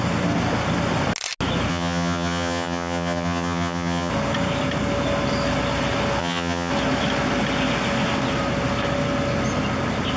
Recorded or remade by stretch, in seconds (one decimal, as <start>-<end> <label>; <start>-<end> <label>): 0.0-1.7 recorded; 1.7-4.1 remade; 4.1-6.2 recorded; 6.2-6.7 remade; 6.7-10.2 recorded